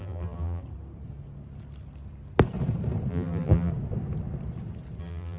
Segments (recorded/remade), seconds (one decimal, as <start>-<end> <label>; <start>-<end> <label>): 0.0-0.6 remade; 0.6-3.1 recorded; 3.1-3.7 remade; 3.7-5.0 recorded; 5.0-5.4 remade